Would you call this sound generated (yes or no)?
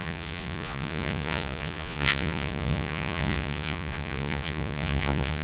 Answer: yes